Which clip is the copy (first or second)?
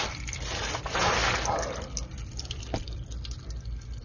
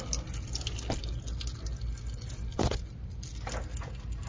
first